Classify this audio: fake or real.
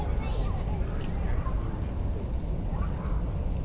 real